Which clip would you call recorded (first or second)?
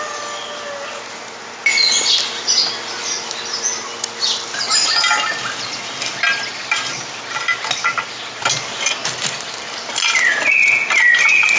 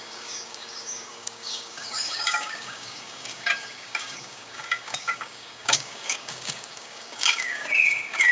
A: first